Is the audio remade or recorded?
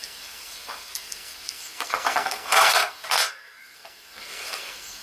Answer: remade